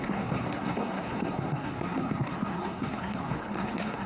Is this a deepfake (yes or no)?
yes